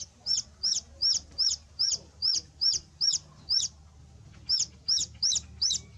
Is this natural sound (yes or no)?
yes